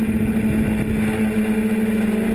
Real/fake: real